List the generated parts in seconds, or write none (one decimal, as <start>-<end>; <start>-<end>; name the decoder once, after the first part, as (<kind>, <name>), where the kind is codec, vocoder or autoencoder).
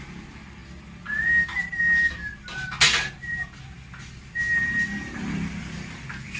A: none